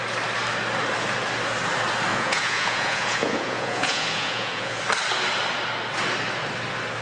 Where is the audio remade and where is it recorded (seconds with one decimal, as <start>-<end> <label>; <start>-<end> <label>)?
0.0-2.1 recorded; 2.1-4.8 remade; 4.8-7.0 recorded